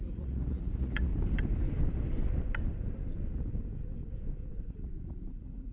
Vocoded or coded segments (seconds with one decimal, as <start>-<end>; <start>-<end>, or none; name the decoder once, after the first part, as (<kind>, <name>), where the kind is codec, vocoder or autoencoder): 0.0-1.1 (vocoder, Vocos); 4.5-5.7